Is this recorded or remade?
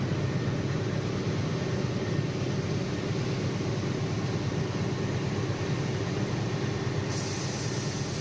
recorded